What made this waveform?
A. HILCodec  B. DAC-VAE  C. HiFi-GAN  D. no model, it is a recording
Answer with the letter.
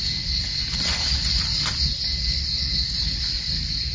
D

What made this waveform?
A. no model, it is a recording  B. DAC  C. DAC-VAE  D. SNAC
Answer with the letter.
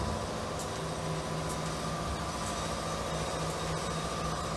A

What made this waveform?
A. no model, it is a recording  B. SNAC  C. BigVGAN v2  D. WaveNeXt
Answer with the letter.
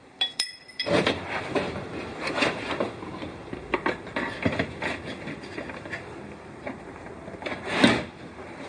C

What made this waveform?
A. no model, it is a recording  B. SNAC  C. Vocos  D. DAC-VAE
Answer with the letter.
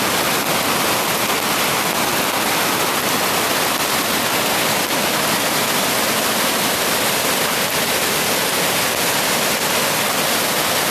A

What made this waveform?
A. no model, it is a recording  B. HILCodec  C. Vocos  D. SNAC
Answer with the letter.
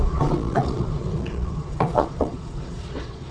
C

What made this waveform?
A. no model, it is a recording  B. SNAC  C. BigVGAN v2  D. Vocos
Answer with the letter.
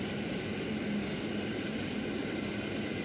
A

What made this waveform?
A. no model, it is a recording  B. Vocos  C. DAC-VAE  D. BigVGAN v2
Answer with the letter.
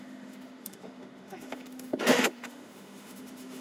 C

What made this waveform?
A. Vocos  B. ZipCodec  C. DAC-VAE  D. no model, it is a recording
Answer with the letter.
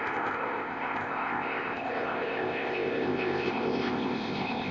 B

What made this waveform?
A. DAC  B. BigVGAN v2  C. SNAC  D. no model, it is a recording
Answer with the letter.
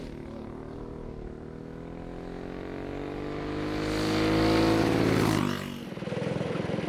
D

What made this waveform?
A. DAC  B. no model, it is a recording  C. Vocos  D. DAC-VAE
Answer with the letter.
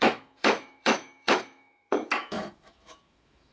D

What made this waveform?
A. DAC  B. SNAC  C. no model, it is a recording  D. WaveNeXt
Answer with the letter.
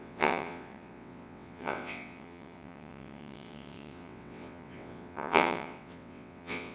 D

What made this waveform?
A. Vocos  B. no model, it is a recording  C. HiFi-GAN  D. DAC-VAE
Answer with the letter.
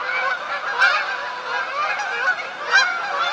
B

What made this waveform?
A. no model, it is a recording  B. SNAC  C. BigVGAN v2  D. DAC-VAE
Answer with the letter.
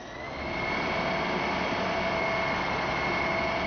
A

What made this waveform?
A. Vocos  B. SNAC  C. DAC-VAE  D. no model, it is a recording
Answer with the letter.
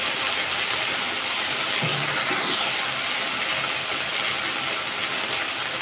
D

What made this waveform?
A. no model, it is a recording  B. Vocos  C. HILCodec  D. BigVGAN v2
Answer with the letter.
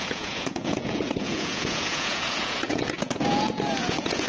B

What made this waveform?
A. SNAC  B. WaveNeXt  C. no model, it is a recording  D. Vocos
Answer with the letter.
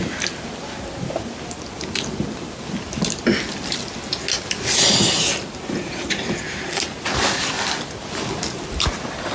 C